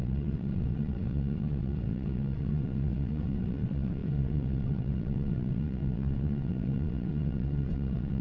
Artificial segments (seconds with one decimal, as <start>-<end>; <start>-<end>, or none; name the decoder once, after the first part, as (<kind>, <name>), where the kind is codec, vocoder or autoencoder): 0.0-8.2 (vocoder, WaveNeXt)